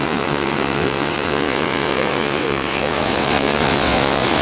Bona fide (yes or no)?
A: no